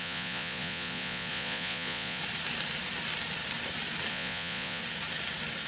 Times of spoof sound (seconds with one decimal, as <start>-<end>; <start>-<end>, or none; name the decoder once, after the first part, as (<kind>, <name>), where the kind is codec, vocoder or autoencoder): 0.0-2.2 (vocoder, Vocos); 4.1-4.8